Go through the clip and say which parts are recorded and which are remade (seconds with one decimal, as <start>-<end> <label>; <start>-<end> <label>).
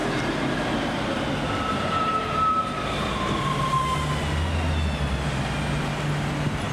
0.0-4.0 remade; 4.0-6.7 recorded